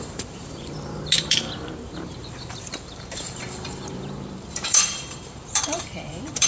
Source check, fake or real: fake